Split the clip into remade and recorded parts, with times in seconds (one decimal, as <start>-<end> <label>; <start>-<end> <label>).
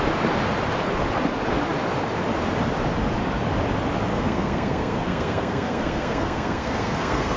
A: 0.0-4.1 recorded; 4.1-7.4 remade